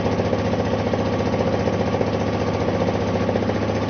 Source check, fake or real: real